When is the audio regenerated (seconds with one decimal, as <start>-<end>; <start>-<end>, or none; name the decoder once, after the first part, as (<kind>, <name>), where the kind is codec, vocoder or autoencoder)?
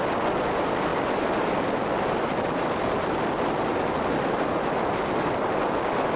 none